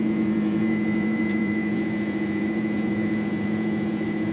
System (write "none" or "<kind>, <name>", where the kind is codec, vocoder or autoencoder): vocoder, Vocos